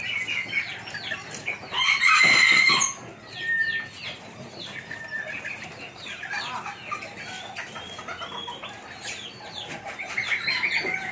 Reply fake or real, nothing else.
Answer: real